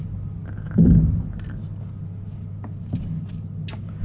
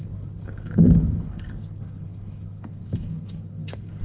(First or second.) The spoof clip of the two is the second